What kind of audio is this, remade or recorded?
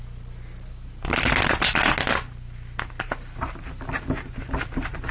recorded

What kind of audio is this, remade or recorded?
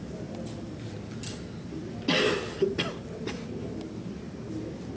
recorded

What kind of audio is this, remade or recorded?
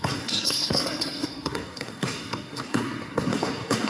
remade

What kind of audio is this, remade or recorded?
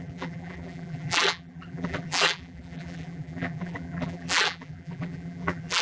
remade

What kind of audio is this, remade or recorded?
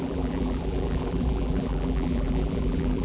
remade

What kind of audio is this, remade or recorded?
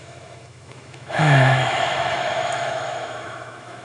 remade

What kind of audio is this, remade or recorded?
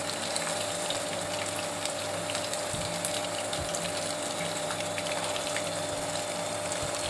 recorded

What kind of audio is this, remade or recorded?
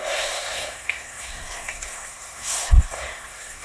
remade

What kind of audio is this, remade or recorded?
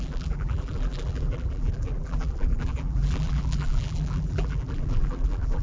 remade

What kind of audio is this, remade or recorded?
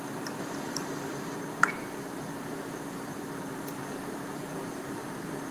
remade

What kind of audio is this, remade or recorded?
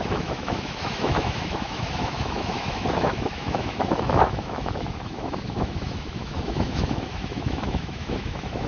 remade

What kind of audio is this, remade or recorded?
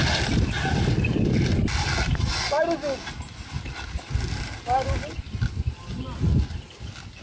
recorded